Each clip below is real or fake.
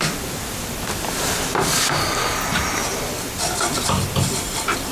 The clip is real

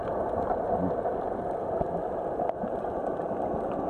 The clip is real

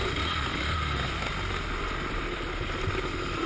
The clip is real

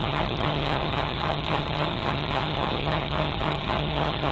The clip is fake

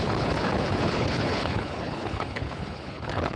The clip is fake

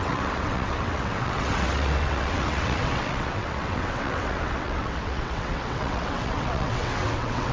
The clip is fake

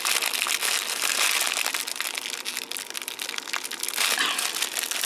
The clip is real